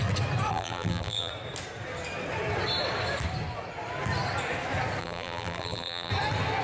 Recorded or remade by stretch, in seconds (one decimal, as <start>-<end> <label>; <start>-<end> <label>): 0.0-0.5 recorded; 0.5-1.3 remade; 1.3-5.0 recorded; 5.0-6.1 remade; 6.1-6.6 recorded